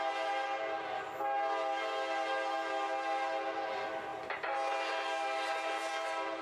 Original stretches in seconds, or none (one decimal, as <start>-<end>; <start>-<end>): 0.0-6.4